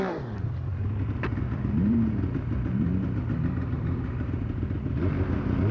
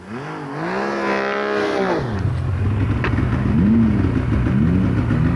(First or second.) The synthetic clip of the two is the first